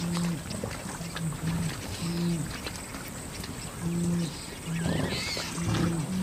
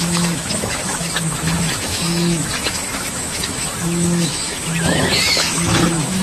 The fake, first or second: second